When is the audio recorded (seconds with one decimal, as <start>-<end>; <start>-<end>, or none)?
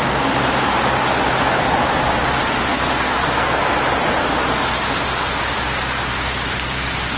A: 0.0-2.7; 3.6-7.2